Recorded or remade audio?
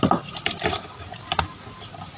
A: recorded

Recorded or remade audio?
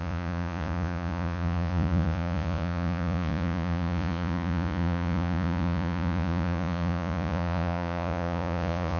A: remade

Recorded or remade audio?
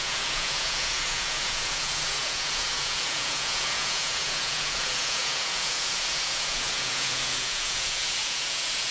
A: remade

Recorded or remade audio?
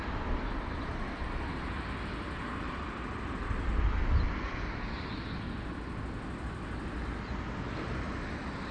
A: recorded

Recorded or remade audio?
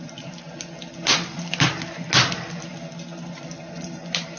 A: recorded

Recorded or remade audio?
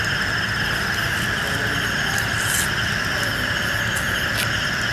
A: recorded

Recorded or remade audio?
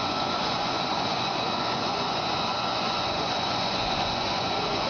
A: remade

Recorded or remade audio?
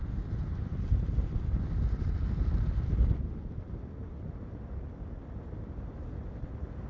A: recorded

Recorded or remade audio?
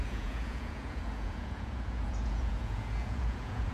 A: remade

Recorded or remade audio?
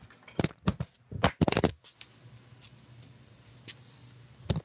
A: recorded